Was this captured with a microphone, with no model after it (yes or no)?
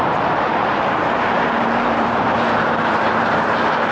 no